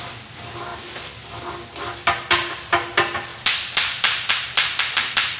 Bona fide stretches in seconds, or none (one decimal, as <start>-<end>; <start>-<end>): 0.0-5.4